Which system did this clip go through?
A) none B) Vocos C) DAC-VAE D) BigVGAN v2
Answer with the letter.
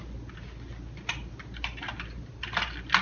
A